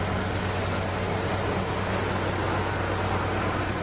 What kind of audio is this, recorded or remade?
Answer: recorded